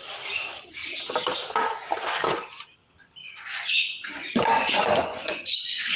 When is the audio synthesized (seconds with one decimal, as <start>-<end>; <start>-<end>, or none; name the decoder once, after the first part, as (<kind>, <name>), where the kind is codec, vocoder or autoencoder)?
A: 3.2-6.0 (vocoder, Vocos)